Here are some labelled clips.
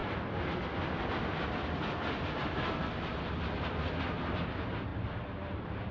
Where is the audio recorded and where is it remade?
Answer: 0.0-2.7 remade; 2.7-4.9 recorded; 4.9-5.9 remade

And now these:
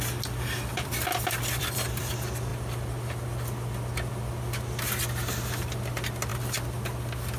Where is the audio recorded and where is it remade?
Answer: 0.0-0.7 recorded; 0.7-2.1 remade; 2.1-7.4 recorded

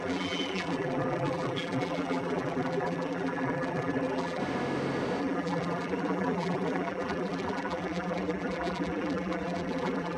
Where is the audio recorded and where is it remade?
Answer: 0.0-4.4 remade; 4.4-5.2 recorded; 5.2-10.2 remade

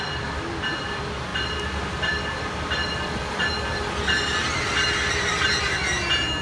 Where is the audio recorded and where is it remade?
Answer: 0.0-6.4 recorded

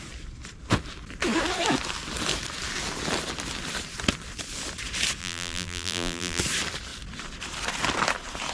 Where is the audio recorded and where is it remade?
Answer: 0.0-5.2 recorded; 5.2-6.4 remade; 6.4-8.5 recorded

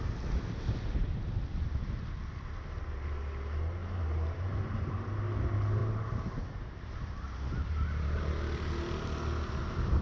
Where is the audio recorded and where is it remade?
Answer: 0.0-3.8 recorded; 3.8-5.2 remade; 5.2-5.8 recorded; 5.8-8.2 remade; 8.2-10.0 recorded

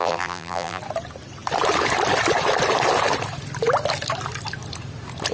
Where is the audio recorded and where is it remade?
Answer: 0.0-0.8 remade; 0.8-5.3 recorded

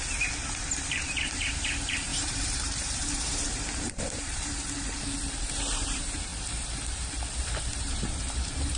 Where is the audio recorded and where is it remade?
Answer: 0.0-0.8 recorded; 0.8-4.5 remade; 4.5-5.6 recorded; 5.6-6.3 remade; 6.3-7.4 recorded; 7.4-8.8 remade